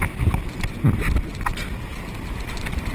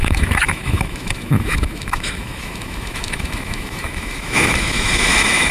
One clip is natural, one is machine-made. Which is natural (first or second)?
first